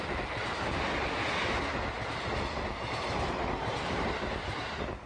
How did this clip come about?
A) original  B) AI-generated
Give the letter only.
A